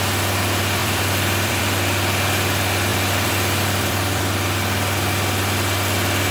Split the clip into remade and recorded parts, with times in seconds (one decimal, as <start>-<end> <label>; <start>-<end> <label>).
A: 0.0-0.8 recorded; 0.8-1.6 remade; 1.6-2.9 recorded; 2.9-4.2 remade; 4.2-6.3 recorded